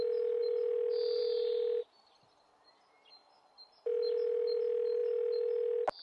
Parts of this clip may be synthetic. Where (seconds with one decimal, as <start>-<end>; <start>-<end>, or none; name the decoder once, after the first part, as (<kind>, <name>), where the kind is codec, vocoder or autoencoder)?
none